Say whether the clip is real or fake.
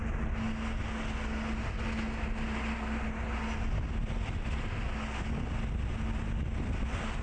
real